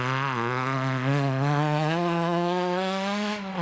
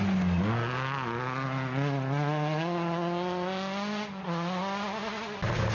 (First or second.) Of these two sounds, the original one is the second